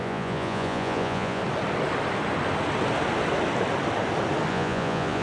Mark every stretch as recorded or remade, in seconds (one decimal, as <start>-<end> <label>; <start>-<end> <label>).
0.0-1.4 remade; 1.4-4.5 recorded; 4.5-5.2 remade